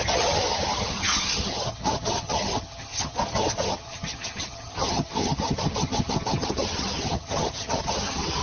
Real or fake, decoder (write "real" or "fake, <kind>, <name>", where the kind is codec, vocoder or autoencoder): fake, vocoder, HiFi-GAN